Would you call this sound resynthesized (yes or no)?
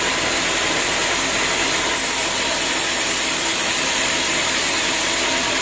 no